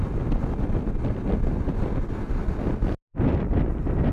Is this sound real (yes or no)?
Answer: yes